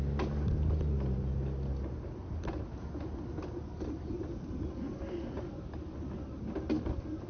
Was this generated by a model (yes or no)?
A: no